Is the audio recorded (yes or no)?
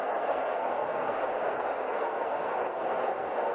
no